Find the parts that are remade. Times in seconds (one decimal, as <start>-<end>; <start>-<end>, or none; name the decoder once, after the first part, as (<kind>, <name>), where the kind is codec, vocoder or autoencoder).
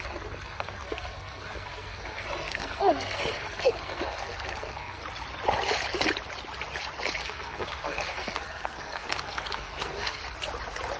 0.0-5.0 (codec, SNAC); 7.2-10.2